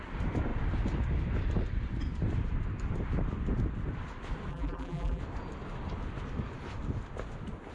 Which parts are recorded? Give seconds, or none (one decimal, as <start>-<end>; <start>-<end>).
0.0-4.5; 5.2-7.7